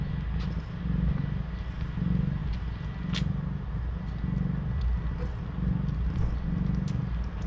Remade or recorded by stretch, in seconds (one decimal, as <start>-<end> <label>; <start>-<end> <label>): 0.0-7.5 recorded